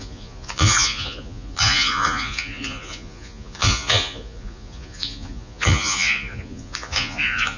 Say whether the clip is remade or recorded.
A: remade